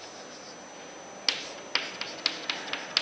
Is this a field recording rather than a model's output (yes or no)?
yes